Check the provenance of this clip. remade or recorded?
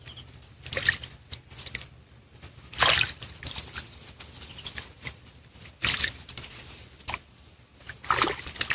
recorded